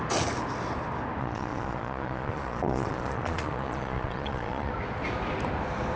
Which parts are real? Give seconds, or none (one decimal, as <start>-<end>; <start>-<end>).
0.0-1.2; 4.7-6.0